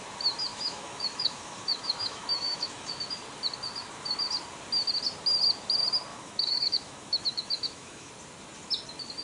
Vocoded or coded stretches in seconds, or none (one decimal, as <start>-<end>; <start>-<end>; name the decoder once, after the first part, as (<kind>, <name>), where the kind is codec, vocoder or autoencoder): 0.5-2.9 (autoencoder, DAC-VAE); 6.1-8.1